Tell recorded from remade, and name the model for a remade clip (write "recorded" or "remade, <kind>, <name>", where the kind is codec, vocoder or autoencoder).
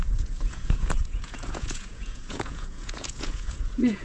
remade, vocoder, Vocos